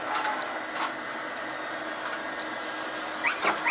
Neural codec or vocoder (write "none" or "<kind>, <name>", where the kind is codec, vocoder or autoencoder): none